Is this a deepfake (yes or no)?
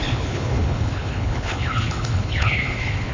yes